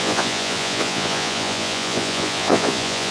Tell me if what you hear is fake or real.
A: fake